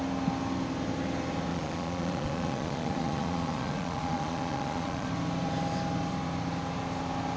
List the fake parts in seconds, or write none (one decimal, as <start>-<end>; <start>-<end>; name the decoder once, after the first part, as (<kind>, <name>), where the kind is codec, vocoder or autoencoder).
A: 1.5-5.1 (vocoder, Vocos)